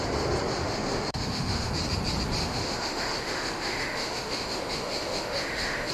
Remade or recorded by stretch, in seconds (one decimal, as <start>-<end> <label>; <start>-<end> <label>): 0.0-0.6 recorded; 0.6-1.7 remade; 1.7-2.4 recorded; 2.4-5.9 remade